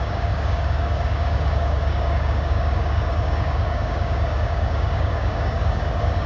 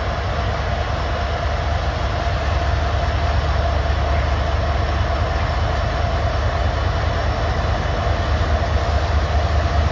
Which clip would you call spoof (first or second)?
first